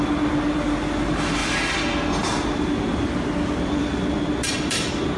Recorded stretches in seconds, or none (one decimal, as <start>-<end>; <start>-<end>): 0.0-5.2